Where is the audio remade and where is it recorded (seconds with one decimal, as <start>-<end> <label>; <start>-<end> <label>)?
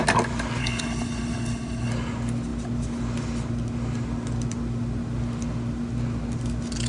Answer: 0.0-0.6 recorded; 0.6-1.9 remade; 1.9-6.9 recorded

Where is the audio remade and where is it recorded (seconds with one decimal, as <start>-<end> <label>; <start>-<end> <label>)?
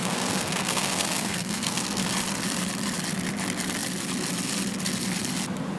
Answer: 0.0-2.0 remade; 2.0-5.8 recorded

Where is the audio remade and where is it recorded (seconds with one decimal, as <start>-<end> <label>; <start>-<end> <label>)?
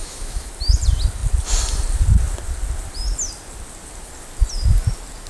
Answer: 0.0-0.5 remade; 0.5-5.3 recorded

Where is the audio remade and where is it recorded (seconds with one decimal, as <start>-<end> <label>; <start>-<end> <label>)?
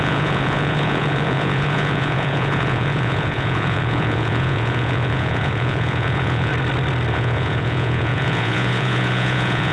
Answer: 0.0-6.5 remade; 6.5-7.1 recorded; 7.1-9.7 remade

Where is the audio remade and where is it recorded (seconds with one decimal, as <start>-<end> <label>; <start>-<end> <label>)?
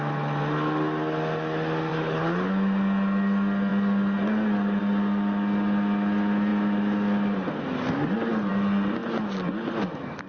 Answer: 0.0-1.9 recorded; 1.9-2.5 remade; 2.5-10.3 recorded